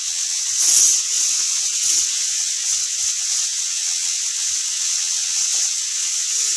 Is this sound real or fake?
fake